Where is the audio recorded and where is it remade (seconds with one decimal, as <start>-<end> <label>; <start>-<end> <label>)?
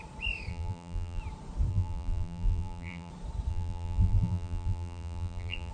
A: 0.0-0.5 recorded; 0.5-1.2 remade; 1.2-1.7 recorded; 1.7-3.1 remade; 3.1-3.5 recorded; 3.5-5.7 remade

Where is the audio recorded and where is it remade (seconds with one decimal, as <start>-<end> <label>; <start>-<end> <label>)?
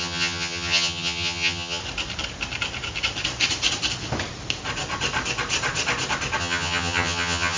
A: 0.0-1.8 remade; 1.8-6.4 recorded; 6.4-7.6 remade